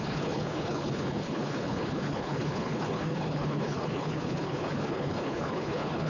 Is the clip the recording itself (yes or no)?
no